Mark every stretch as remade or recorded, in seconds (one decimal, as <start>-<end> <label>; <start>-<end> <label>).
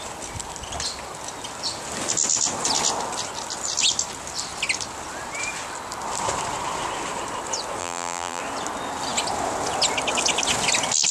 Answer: 0.0-7.8 recorded; 7.8-8.4 remade; 8.4-11.1 recorded